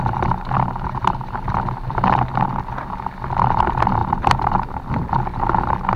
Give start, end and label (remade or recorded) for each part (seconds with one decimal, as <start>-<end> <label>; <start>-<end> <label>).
0.0-6.0 recorded

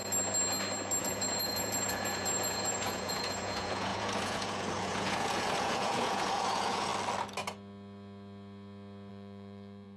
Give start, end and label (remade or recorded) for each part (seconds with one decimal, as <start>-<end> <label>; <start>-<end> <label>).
0.0-1.0 recorded; 1.0-6.9 remade; 6.9-9.1 recorded; 9.1-10.0 remade

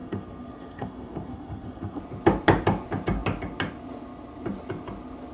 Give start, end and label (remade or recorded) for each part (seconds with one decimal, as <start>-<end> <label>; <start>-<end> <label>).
0.0-2.0 remade; 2.0-5.3 recorded

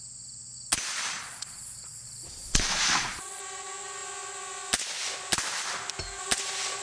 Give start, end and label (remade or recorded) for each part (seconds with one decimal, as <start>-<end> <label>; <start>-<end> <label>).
0.0-1.2 recorded; 1.2-3.4 remade; 3.4-6.8 recorded

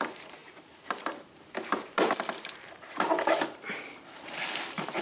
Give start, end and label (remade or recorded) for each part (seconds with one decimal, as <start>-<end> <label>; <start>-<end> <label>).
0.0-5.0 remade

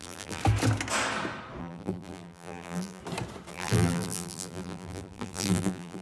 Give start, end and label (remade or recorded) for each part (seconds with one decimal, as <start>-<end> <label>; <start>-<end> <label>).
0.0-0.4 remade; 0.4-1.6 recorded; 1.6-3.0 remade; 3.0-3.5 recorded; 3.5-6.0 remade

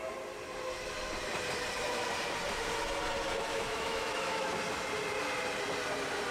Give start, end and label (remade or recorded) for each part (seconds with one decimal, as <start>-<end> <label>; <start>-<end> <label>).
0.0-3.5 recorded; 3.5-4.6 remade; 4.6-6.3 recorded